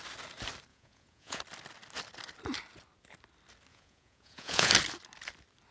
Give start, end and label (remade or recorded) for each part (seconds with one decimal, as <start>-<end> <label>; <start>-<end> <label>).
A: 0.0-0.7 recorded; 0.7-1.4 remade; 1.4-3.7 recorded; 3.7-4.7 remade; 4.7-5.7 recorded